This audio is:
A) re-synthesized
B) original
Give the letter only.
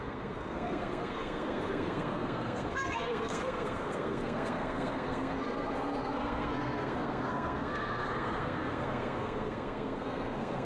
A